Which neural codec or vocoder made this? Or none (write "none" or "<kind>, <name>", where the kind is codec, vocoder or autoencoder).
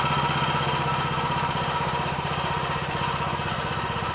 vocoder, BigVGAN v2